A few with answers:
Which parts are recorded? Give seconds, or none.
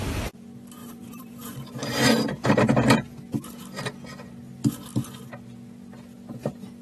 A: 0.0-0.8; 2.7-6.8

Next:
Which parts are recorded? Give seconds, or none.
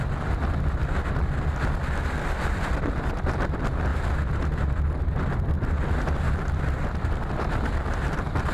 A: 0.0-8.5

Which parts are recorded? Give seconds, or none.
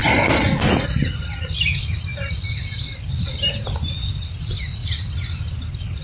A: 0.0-3.6; 4.8-5.4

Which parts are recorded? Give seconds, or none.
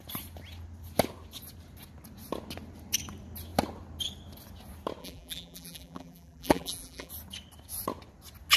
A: 0.0-5.0; 7.1-8.6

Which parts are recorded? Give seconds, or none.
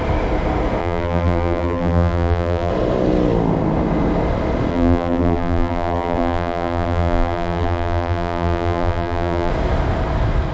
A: 0.0-0.8; 2.7-4.7; 9.5-10.5